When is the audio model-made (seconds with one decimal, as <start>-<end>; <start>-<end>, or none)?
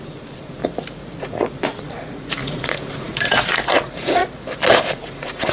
0.0-0.6; 1.2-4.2; 4.8-5.5